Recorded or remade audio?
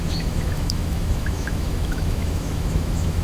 remade